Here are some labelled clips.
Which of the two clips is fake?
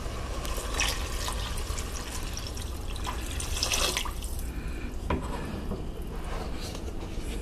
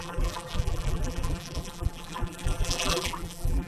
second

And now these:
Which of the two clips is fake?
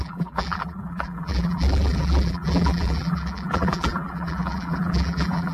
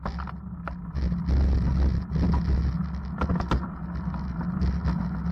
first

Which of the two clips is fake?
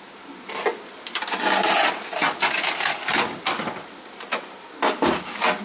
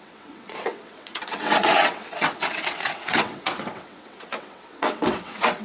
second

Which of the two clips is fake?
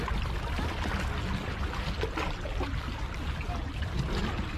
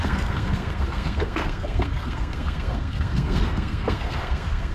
second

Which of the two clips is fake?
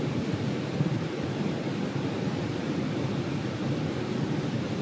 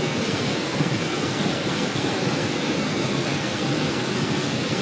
second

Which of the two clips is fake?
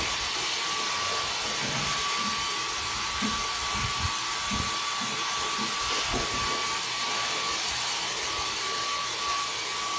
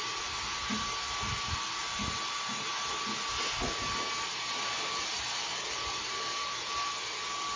first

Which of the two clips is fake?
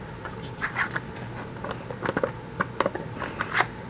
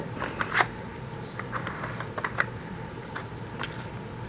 second